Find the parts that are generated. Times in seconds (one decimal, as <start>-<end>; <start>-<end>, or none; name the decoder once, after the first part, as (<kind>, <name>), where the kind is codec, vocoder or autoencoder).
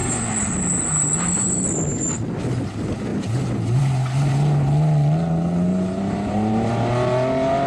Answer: 5.7-6.7 (vocoder, BigVGAN v2)